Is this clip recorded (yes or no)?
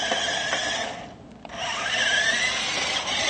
yes